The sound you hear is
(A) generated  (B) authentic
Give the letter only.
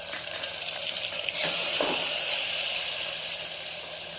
A